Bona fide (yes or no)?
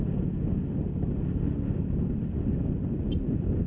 yes